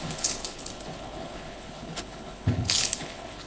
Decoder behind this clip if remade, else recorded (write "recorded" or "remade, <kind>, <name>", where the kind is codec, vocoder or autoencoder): remade, codec, HILCodec